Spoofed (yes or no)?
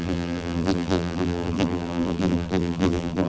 yes